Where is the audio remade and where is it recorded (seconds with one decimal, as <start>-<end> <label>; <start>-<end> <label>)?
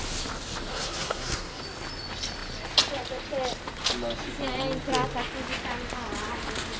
0.0-0.7 recorded; 0.7-1.6 remade; 1.6-6.8 recorded